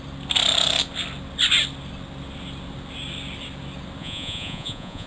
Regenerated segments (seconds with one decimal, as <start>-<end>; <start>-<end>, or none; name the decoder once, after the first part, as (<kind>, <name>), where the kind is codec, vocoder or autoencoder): 4.0-5.1 (vocoder, Vocos)